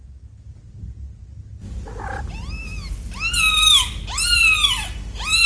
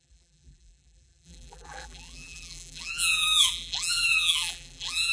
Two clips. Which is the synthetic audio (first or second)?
second